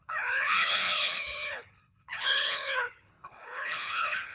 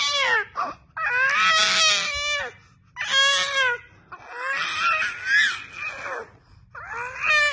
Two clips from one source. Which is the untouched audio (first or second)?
second